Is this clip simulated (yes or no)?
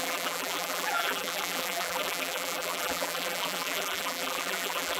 yes